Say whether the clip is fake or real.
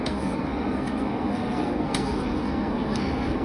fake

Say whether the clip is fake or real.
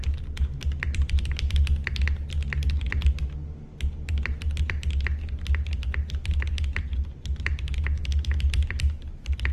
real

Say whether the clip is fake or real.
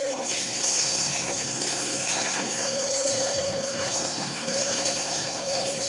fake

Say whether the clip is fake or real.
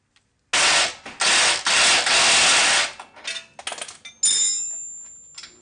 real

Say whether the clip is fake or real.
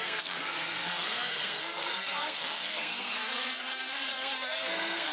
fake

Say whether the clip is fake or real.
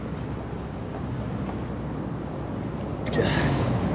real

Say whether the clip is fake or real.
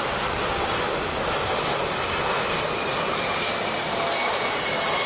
real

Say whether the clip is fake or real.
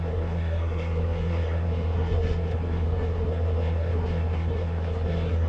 fake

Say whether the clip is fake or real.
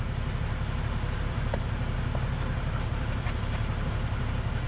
real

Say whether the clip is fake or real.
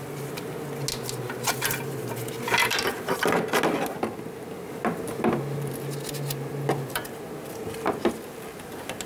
real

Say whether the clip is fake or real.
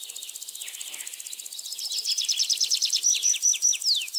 real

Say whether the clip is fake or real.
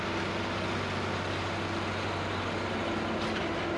real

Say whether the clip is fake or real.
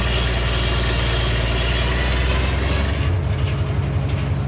real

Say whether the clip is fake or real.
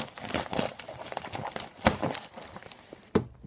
real